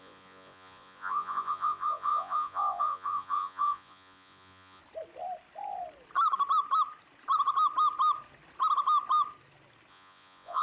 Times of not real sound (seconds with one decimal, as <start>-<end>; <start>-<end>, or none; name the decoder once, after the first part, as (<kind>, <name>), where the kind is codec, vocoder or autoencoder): 0.0-4.8 (vocoder, Vocos); 9.9-10.6